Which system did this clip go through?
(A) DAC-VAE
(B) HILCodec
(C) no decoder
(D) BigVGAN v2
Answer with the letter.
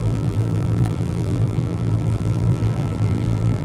D